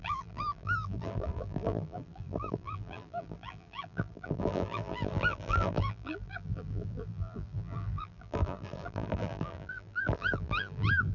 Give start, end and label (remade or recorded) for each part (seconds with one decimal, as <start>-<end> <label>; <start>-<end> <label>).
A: 0.0-11.1 remade